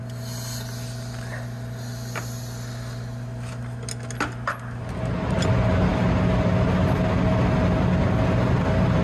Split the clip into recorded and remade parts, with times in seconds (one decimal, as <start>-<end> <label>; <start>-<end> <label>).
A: 0.0-9.0 recorded